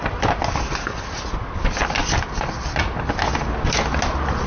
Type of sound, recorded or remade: recorded